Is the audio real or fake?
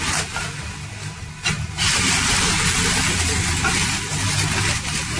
real